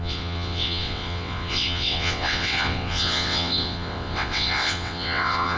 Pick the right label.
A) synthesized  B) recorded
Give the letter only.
A